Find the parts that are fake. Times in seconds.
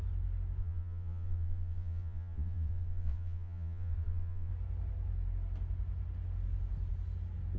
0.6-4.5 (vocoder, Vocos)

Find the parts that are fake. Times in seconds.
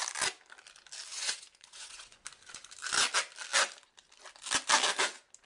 1.1-2.2 (vocoder, Vocos)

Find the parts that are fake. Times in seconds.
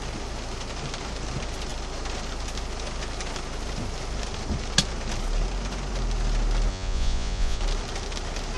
6.7-7.6 (vocoder, Vocos)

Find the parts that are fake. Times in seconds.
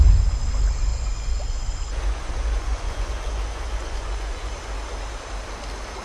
0.9-4.5 (vocoder, Vocos)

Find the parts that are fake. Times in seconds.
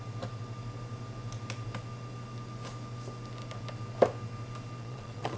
4.8-5.4 (vocoder, Vocos)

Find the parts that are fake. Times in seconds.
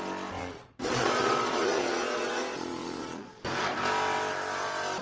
0.4-3.4 (vocoder, Vocos)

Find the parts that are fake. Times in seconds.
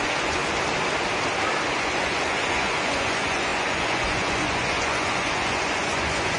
0.0-0.4 (vocoder, Vocos); 1.7-6.4